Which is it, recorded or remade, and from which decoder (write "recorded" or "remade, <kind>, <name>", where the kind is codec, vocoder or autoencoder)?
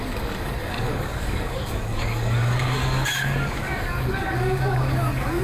remade, codec, DAC